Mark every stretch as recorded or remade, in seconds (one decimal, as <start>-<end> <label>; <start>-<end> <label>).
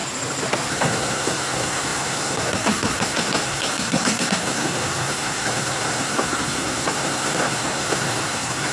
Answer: 0.0-0.7 recorded; 0.7-8.7 remade